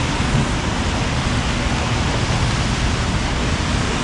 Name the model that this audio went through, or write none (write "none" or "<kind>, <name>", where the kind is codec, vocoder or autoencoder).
none